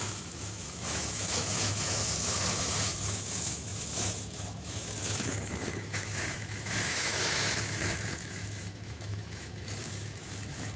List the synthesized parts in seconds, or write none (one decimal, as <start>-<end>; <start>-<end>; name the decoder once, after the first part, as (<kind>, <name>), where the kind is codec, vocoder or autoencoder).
0.0-10.8 (autoencoder, DAC-VAE)